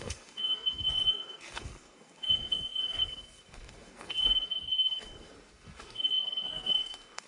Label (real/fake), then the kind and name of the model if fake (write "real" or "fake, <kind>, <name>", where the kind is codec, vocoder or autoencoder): fake, codec, SNAC